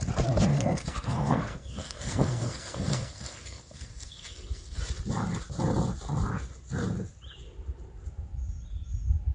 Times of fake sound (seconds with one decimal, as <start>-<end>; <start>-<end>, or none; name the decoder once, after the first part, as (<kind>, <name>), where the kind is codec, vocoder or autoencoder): 0.5-4.8 (codec, SNAC)